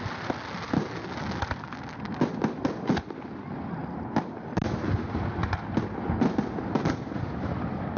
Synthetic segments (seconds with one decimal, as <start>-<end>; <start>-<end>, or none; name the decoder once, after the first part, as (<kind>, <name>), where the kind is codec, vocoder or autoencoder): none